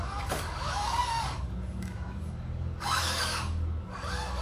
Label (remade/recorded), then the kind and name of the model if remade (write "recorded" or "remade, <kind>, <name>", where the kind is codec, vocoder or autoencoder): remade, codec, DAC